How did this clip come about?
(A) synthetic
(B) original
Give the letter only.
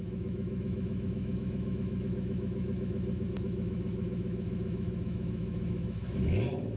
A